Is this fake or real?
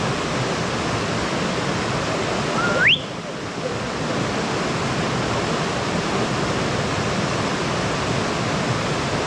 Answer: real